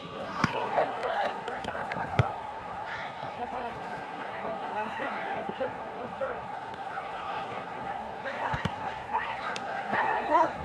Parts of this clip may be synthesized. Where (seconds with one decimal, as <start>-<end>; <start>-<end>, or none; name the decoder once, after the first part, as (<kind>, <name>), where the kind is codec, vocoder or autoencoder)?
0.0-10.6 (codec, SNAC)